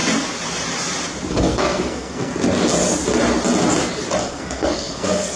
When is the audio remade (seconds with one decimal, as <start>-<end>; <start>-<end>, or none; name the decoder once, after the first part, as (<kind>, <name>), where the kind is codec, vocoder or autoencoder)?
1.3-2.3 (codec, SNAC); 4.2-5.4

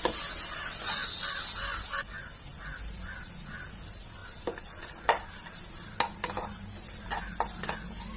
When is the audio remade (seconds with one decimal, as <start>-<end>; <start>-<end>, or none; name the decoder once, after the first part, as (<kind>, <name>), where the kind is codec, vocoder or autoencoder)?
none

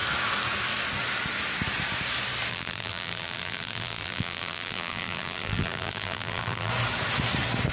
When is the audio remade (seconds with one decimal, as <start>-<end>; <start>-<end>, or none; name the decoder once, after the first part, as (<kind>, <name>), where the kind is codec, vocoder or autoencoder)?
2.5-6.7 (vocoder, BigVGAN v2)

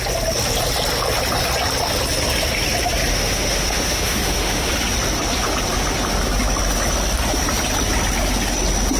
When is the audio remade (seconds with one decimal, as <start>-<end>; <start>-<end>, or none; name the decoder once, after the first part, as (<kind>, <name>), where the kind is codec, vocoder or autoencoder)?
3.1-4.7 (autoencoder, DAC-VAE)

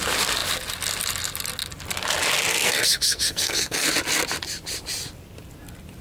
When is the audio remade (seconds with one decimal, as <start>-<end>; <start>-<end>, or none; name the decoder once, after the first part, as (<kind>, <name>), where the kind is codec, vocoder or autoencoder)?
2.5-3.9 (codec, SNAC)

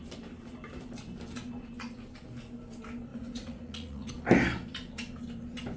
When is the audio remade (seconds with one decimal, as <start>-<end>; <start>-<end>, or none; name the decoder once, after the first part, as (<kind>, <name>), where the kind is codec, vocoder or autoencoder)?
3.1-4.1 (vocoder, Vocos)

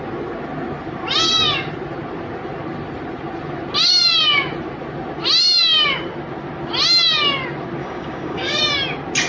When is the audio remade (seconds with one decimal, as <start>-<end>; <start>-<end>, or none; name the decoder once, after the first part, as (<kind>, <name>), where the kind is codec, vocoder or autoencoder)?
7.8-8.6 (codec, DAC)

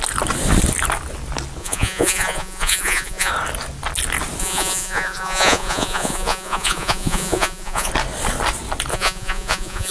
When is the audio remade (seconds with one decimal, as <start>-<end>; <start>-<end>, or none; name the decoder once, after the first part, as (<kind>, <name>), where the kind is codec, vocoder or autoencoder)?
1.6-3.3 (vocoder, Vocos); 4.4-7.9; 8.9-9.9